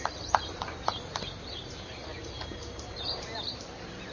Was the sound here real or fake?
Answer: fake